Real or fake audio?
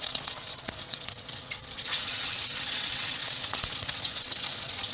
fake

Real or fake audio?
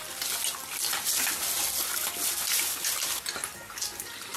real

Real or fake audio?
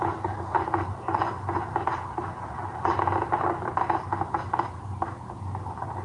real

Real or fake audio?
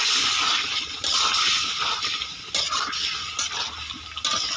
real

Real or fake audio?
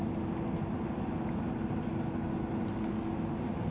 real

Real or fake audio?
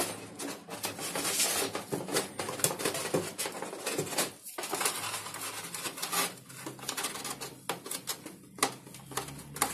real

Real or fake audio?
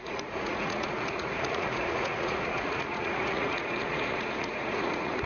fake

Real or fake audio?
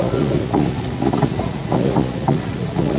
fake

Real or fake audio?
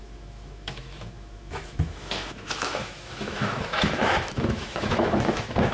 fake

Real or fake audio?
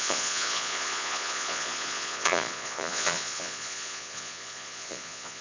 fake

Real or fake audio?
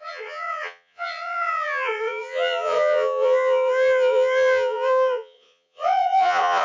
fake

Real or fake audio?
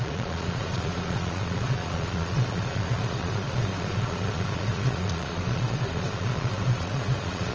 fake